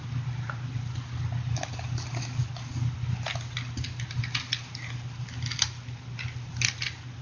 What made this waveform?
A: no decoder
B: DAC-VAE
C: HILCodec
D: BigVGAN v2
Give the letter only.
D